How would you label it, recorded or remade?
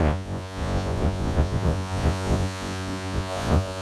remade